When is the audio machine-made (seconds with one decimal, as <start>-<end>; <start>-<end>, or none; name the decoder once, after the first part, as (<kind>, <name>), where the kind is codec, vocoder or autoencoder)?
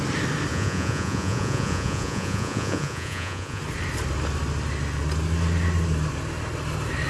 0.5-3.6 (vocoder, Vocos)